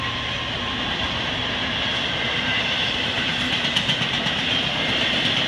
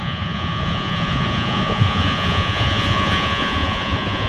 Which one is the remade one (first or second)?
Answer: second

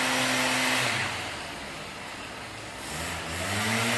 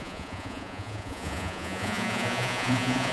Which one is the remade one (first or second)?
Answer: second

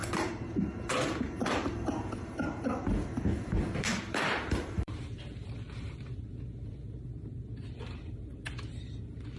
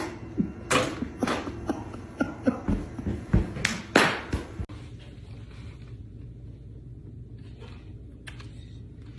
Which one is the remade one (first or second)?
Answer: first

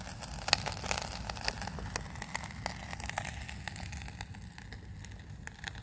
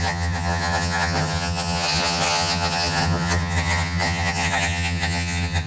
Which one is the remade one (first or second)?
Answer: second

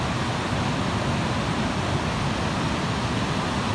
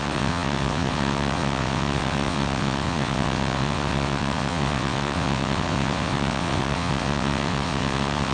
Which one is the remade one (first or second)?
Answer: second